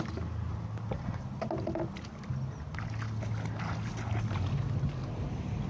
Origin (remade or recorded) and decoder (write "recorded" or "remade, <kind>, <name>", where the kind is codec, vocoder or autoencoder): recorded